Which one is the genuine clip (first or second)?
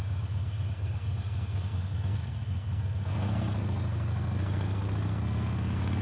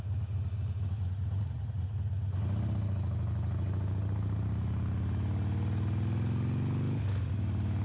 second